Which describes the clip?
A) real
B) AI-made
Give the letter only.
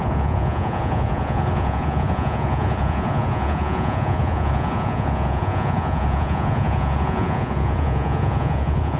B